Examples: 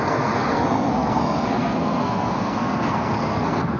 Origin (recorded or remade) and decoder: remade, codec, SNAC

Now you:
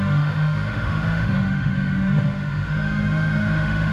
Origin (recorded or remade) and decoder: remade, autoencoder, DAC-VAE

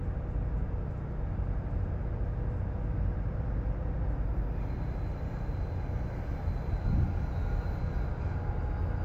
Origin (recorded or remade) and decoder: recorded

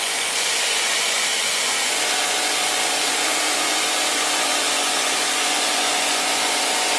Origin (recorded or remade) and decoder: remade, vocoder, Vocos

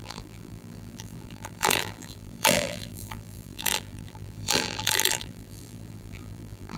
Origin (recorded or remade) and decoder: remade, vocoder, BigVGAN v2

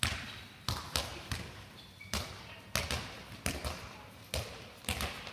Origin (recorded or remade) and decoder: recorded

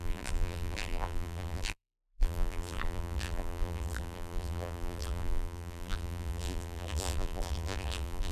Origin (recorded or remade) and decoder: remade, vocoder, BigVGAN v2